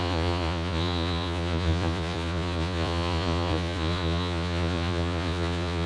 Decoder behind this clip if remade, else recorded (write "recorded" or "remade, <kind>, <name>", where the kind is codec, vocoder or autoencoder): remade, vocoder, Vocos